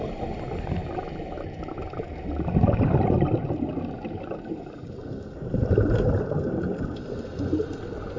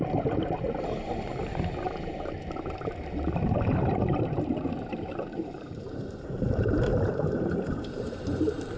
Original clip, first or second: first